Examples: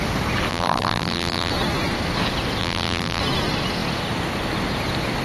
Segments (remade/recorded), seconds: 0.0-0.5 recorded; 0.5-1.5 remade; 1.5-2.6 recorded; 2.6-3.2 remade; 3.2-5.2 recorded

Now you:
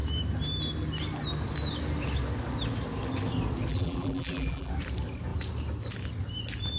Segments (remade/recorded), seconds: 0.0-3.7 recorded; 3.7-4.7 remade; 4.7-6.8 recorded

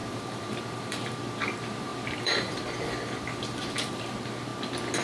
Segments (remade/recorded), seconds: 0.0-4.5 remade; 4.5-5.0 recorded

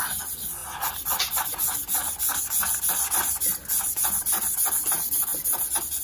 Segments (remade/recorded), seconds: 0.0-0.6 remade; 0.6-4.2 recorded; 4.2-5.3 remade; 5.3-6.0 recorded